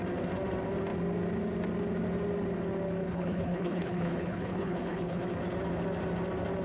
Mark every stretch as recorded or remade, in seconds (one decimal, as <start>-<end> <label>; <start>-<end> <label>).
0.0-3.0 recorded; 3.0-5.2 remade; 5.2-6.6 recorded